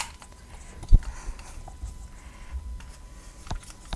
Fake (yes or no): no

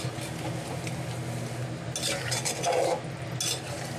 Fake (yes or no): no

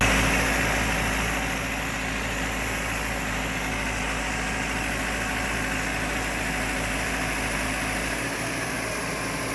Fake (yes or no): no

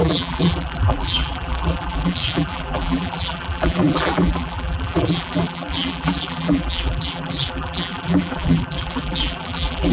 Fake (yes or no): yes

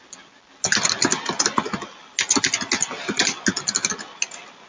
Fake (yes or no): no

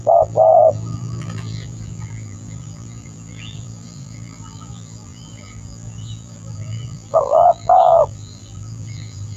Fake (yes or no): yes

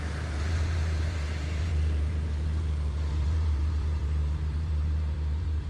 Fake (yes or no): yes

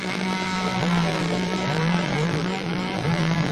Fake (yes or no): yes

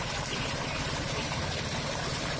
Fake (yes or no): yes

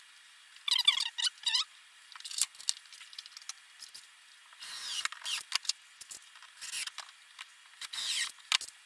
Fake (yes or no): no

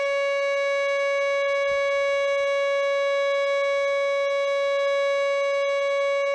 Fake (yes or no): no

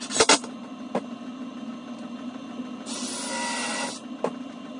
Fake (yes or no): no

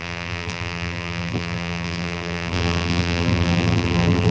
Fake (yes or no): yes